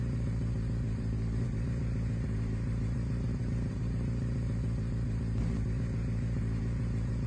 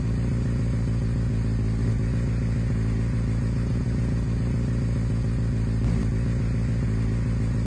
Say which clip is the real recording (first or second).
second